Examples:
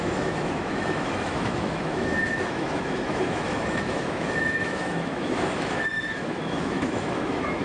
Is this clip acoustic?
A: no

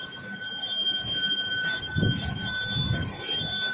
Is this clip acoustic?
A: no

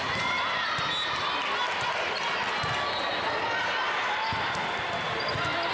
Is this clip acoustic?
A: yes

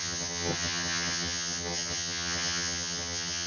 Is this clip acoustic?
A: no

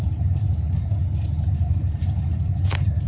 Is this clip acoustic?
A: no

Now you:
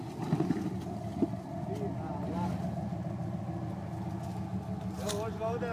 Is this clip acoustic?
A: yes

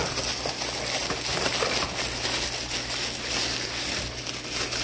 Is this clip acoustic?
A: yes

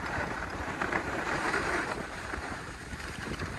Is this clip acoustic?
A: no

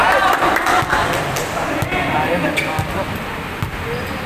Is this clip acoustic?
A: yes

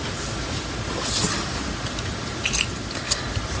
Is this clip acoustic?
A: yes